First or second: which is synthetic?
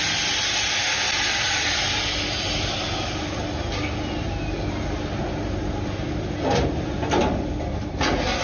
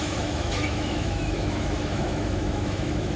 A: second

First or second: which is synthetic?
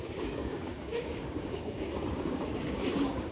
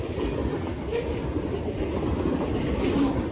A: first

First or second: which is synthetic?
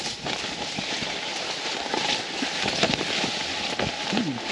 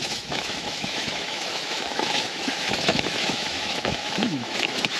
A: second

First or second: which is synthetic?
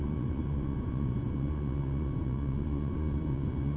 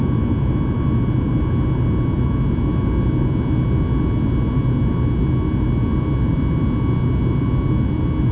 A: first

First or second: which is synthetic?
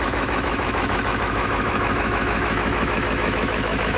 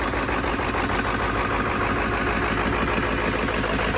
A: first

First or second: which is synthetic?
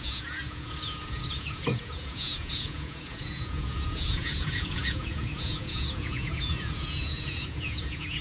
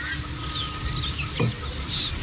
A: first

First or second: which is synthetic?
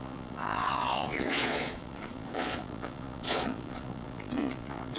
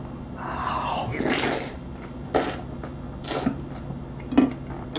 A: first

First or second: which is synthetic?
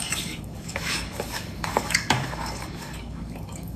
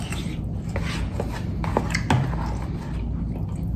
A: first